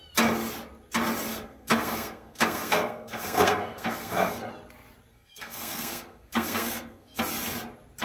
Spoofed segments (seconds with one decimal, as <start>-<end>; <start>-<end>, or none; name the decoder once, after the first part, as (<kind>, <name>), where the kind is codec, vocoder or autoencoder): 1.3-4.5 (codec, SNAC); 5.1-7.2